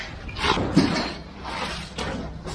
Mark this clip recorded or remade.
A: recorded